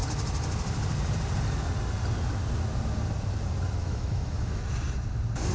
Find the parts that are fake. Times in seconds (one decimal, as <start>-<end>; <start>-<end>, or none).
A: 3.8-4.6